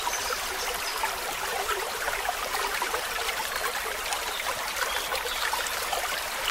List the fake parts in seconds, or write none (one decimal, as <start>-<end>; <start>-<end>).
1.5-3.3